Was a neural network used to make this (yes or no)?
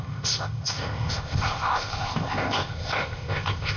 yes